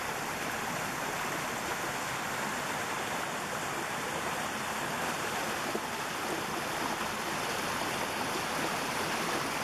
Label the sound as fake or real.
real